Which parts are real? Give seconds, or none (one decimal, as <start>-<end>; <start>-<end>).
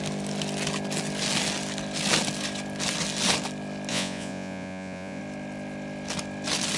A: 0.0-3.9; 5.2-6.8